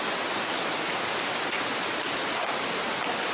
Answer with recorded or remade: recorded